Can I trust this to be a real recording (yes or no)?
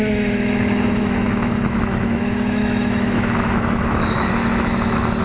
no